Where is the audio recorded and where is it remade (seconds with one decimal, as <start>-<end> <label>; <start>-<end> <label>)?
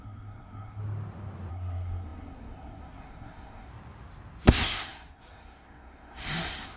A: 0.0-0.8 remade; 0.8-1.5 recorded; 1.5-3.7 remade; 3.7-4.5 recorded; 4.5-6.8 remade